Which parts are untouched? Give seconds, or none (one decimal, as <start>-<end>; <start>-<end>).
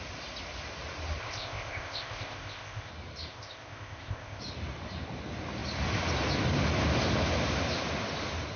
0.0-1.2; 2.9-3.3; 4.4-8.6